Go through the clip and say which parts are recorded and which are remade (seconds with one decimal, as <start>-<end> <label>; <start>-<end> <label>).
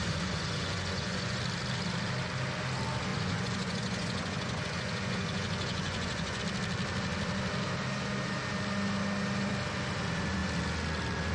0.0-1.4 remade; 1.4-3.1 recorded; 3.1-6.4 remade; 6.4-11.3 recorded